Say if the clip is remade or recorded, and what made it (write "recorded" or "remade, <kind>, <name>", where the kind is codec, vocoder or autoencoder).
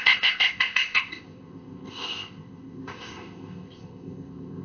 remade, codec, ZipCodec